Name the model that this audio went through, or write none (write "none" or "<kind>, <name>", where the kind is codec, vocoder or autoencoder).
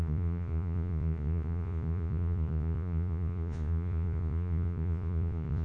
vocoder, Vocos